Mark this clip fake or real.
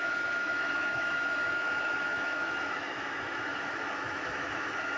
fake